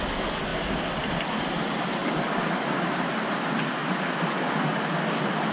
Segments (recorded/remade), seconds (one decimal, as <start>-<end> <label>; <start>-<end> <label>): 0.0-5.5 recorded

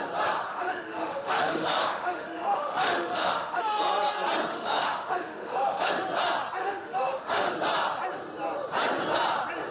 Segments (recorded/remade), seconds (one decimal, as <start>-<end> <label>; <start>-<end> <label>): 0.0-0.5 recorded; 0.5-3.8 remade; 3.8-4.5 recorded; 4.5-5.9 remade; 5.9-6.6 recorded; 6.6-7.5 remade; 7.5-9.7 recorded